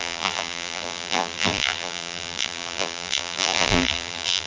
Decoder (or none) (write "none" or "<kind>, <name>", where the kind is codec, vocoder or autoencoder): vocoder, BigVGAN v2